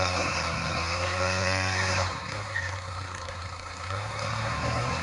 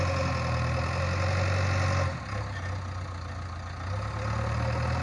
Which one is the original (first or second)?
second